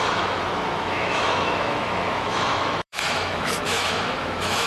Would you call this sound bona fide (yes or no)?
no